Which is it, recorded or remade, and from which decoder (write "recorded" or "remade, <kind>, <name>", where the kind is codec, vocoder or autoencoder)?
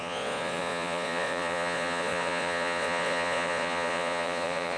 remade, vocoder, Vocos